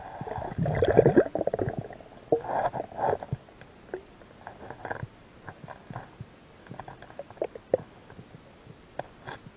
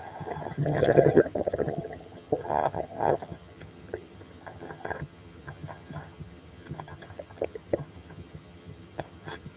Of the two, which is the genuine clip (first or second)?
first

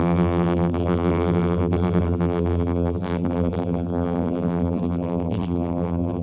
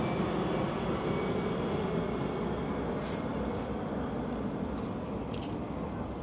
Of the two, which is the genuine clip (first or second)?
second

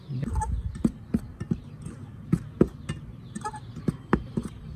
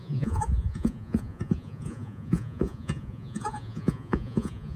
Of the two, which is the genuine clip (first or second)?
first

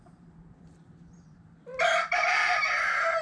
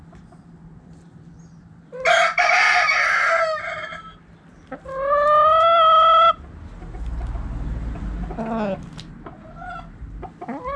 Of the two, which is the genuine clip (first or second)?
second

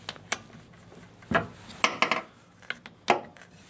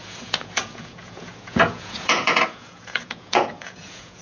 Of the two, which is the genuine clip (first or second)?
first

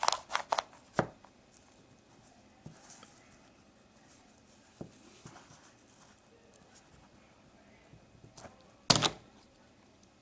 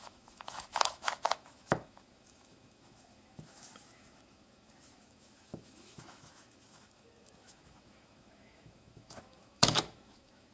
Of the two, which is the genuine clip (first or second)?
first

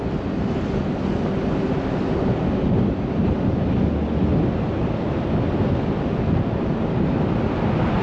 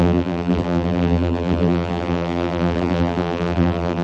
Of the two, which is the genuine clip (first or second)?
first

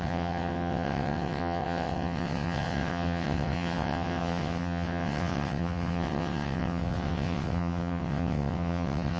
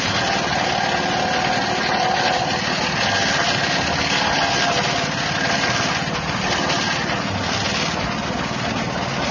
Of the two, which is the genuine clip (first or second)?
second